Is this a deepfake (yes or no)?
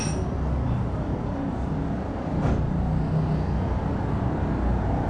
no